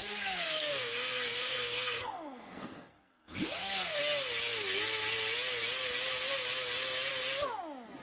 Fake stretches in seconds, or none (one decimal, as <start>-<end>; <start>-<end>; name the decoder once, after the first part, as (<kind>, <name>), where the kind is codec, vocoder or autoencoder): 0.0-4.0 (codec, SNAC)